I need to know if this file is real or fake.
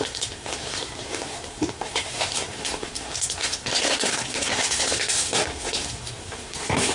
fake